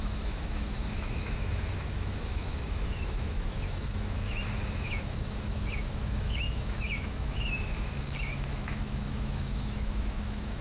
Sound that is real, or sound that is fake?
fake